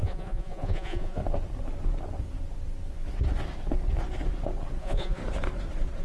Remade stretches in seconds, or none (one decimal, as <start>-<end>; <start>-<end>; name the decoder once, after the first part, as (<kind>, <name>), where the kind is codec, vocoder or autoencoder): 0.0-1.2 (vocoder, Vocos); 4.8-5.2